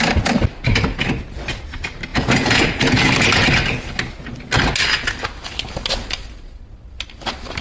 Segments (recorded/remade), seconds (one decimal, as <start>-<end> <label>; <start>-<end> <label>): 0.0-2.1 recorded; 2.1-3.1 remade; 3.1-7.6 recorded